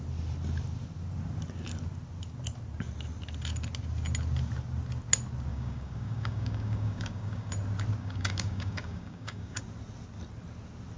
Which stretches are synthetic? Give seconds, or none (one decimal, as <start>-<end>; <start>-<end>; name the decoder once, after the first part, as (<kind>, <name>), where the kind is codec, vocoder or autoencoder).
5.5-7.5 (codec, DAC); 8.0-9.6